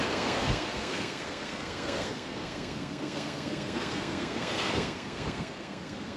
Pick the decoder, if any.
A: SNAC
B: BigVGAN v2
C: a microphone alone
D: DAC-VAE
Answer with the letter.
A